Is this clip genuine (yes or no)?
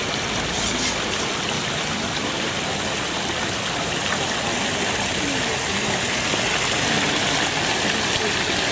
yes